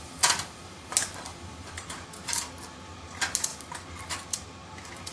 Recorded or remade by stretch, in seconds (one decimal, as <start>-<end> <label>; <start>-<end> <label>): 0.0-5.1 recorded